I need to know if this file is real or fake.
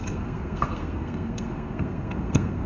fake